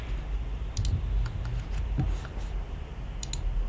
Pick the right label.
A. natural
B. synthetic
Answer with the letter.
A